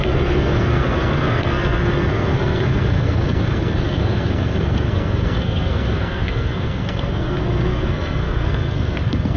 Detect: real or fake fake